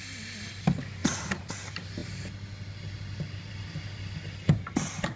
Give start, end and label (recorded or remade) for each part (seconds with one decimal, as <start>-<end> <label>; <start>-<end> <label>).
0.0-1.0 recorded; 1.0-1.5 remade; 1.5-5.2 recorded

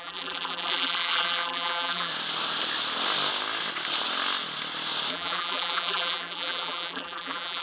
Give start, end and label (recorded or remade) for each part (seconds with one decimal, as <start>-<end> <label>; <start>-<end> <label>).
0.0-2.1 remade; 2.1-5.1 recorded; 5.1-7.6 remade

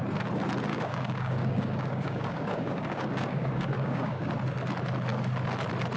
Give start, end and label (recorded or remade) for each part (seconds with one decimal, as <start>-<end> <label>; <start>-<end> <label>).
0.0-0.7 recorded; 0.7-4.3 remade; 4.3-6.0 recorded

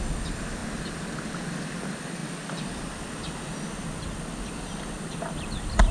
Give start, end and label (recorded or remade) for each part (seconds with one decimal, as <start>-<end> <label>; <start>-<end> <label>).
0.0-5.9 recorded

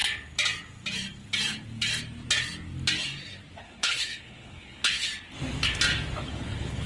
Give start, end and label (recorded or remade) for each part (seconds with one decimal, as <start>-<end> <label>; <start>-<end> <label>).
0.0-3.6 recorded; 3.6-5.1 remade; 5.1-6.2 recorded; 6.2-6.9 remade

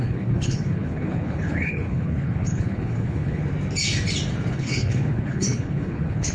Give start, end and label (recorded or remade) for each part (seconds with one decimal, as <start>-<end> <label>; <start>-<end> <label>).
0.0-3.4 remade; 3.4-4.5 recorded; 4.5-6.3 remade

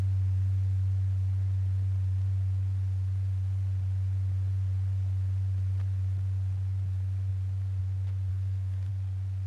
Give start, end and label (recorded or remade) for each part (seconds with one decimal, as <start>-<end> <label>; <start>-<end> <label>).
0.0-8.3 recorded; 8.3-8.9 remade; 8.9-9.5 recorded